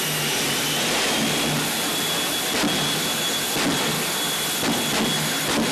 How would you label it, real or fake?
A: real